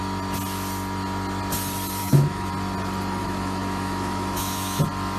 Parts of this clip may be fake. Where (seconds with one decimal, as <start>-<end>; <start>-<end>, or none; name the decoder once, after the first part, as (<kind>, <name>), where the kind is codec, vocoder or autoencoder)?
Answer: 2.0-2.5 (autoencoder, DAC-VAE); 3.2-4.8